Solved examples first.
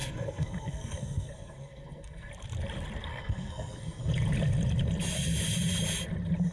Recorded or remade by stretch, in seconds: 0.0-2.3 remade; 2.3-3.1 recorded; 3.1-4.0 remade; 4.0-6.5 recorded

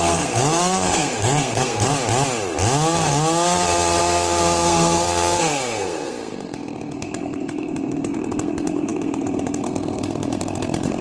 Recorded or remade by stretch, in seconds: 0.0-1.9 remade; 1.9-4.0 recorded; 4.0-11.0 remade

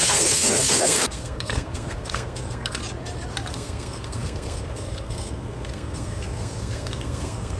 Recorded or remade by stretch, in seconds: 0.0-2.8 remade; 2.8-3.5 recorded; 3.5-7.6 remade

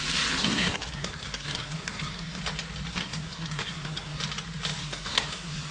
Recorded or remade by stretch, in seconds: 0.0-0.4 recorded; 0.4-2.4 remade; 2.4-2.9 recorded; 2.9-4.2 remade; 4.2-4.8 recorded; 4.8-5.7 remade